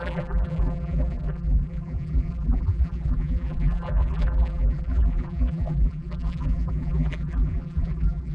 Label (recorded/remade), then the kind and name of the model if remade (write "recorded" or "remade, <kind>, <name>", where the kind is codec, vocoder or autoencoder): remade, vocoder, BigVGAN v2